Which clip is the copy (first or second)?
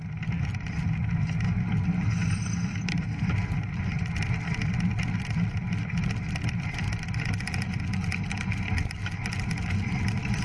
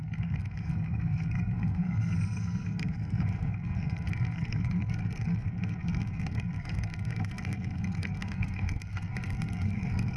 second